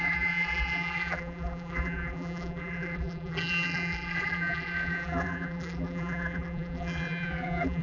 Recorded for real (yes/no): no